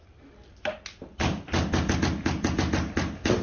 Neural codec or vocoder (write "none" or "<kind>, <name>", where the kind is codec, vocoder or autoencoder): none